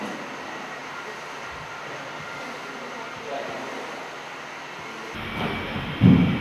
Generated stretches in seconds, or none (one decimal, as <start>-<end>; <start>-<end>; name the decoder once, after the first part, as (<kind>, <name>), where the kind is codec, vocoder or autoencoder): none